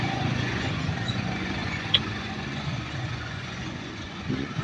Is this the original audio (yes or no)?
no